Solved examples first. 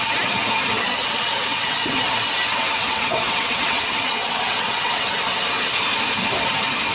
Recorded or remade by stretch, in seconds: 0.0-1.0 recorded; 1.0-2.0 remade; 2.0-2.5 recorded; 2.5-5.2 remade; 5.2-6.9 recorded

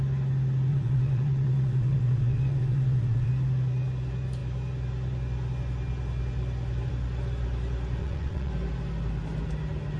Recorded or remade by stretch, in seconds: 0.0-0.7 recorded; 0.7-3.3 remade; 3.3-8.0 recorded; 8.0-8.5 remade; 8.5-10.0 recorded

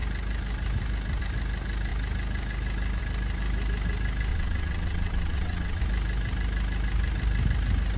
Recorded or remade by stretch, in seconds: 0.0-4.3 recorded; 4.3-5.8 remade; 5.8-8.0 recorded

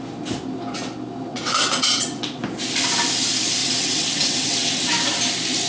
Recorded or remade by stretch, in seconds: 0.0-1.3 recorded; 1.3-2.4 remade; 2.4-3.6 recorded; 3.6-4.9 remade; 4.9-5.7 recorded

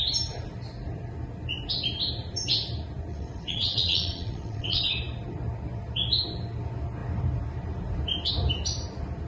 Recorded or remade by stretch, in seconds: 0.0-3.1 recorded; 3.1-4.8 remade; 4.8-9.3 recorded

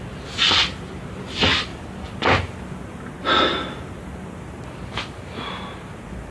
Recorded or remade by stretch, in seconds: 0.0-6.3 recorded

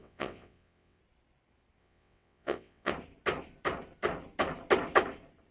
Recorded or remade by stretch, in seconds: 0.0-1.0 remade; 1.0-1.8 recorded; 1.8-2.9 remade; 2.9-5.5 recorded

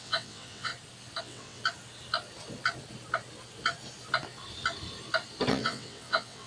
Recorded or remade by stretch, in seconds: 0.0-0.7 remade; 0.7-1.2 recorded; 1.2-1.6 remade; 1.6-5.5 recorded; 5.5-6.5 remade